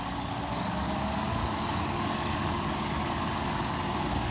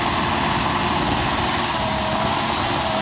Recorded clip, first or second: second